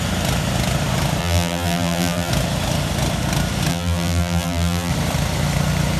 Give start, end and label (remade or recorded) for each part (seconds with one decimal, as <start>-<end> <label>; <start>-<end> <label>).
0.0-1.2 recorded; 1.2-2.3 remade; 2.3-3.7 recorded; 3.7-4.9 remade; 4.9-6.0 recorded

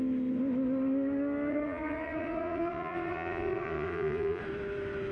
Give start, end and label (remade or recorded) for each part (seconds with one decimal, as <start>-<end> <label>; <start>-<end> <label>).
0.0-1.5 recorded; 1.5-4.4 remade; 4.4-5.1 recorded

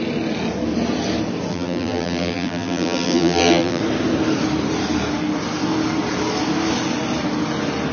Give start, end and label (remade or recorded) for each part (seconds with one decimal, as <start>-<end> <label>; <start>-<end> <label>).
0.0-1.5 recorded; 1.5-3.8 remade; 3.8-7.9 recorded